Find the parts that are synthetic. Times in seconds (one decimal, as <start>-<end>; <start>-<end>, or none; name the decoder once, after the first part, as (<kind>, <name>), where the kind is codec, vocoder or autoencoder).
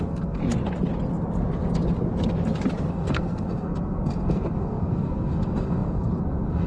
0.0-0.4 (codec, SNAC); 2.9-6.7